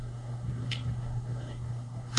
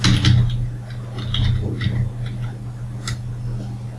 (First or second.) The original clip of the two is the second